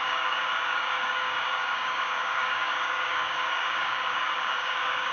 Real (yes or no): no